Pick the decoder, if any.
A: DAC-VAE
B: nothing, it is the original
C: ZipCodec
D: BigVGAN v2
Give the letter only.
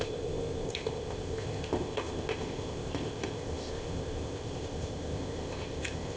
C